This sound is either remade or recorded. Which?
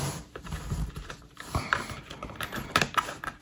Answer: remade